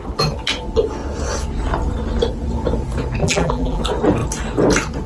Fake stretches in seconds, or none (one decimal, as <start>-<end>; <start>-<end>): 3.2-3.8